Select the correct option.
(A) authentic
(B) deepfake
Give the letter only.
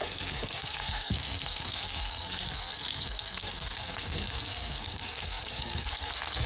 B